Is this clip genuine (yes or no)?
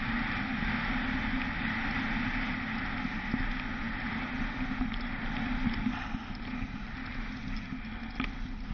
yes